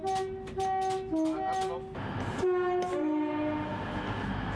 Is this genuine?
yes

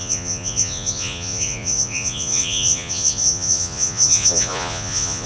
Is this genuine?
no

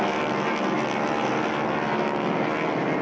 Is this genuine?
yes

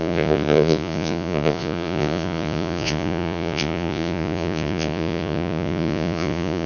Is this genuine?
no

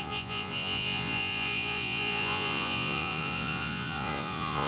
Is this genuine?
no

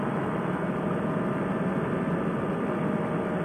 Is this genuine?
yes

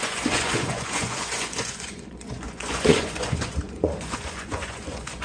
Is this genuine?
no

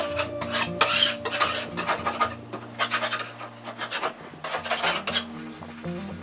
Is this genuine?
yes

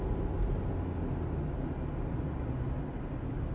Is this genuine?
yes